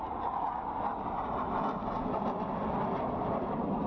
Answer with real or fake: real